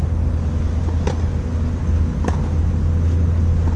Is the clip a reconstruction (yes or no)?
no